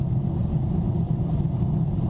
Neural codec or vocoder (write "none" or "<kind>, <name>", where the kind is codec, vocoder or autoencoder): vocoder, BigVGAN v2